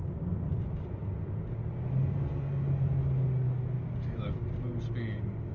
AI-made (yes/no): no